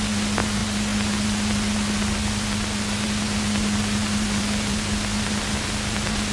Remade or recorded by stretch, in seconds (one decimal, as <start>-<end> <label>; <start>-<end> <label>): 0.0-6.3 recorded